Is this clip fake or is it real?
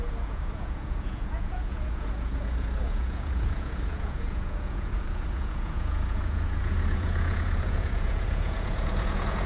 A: fake